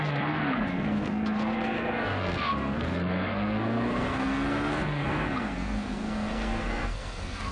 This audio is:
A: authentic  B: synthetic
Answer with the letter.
B